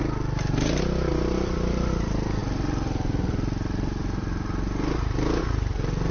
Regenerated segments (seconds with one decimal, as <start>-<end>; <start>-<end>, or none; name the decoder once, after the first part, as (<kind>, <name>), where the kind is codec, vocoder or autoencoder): 1.1-1.9 (vocoder, BigVGAN v2)